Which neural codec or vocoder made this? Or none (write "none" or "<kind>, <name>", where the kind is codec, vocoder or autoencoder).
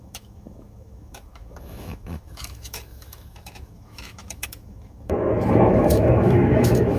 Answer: autoencoder, DAC-VAE